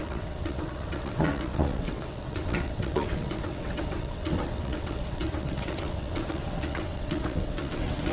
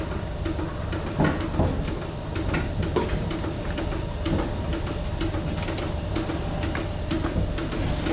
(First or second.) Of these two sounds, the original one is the second